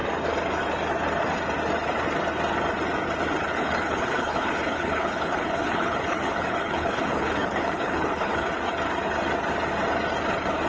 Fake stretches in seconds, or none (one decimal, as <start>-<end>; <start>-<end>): 3.5-8.5